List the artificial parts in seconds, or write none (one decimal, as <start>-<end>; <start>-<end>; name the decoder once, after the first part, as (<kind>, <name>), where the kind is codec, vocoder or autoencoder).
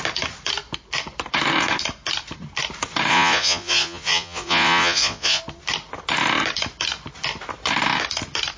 3.1-5.4 (vocoder, Vocos)